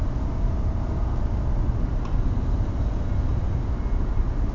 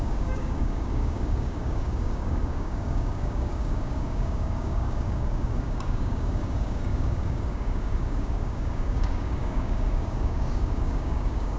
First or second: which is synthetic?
second